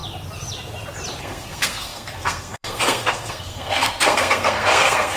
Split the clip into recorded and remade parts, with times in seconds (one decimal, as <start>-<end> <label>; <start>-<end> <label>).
0.0-1.2 recorded; 1.2-5.2 remade